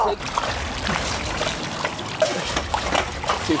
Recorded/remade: recorded